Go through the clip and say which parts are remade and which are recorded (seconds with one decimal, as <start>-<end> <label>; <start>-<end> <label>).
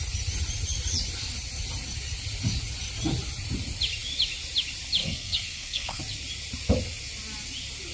0.0-5.0 recorded; 5.0-6.0 remade; 6.0-7.9 recorded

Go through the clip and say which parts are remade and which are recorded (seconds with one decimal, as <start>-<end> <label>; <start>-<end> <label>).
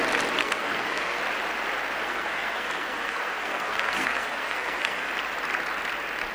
0.0-0.4 recorded; 0.4-1.2 remade; 1.2-2.0 recorded; 2.0-5.1 remade; 5.1-6.3 recorded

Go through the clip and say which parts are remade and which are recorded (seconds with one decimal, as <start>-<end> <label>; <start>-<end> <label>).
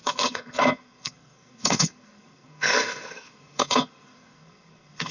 0.0-5.1 remade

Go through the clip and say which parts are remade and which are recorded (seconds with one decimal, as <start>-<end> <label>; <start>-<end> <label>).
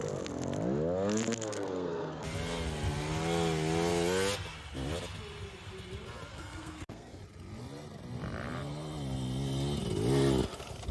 0.0-1.5 recorded; 1.5-2.2 remade; 2.2-6.3 recorded; 6.3-7.2 remade; 7.2-10.9 recorded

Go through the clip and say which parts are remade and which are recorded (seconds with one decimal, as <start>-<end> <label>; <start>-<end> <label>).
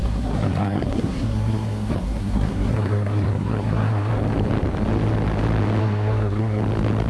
0.0-4.1 remade; 4.1-5.8 recorded; 5.8-6.6 remade; 6.6-7.1 recorded